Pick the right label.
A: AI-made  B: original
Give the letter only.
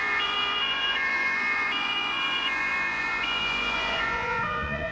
A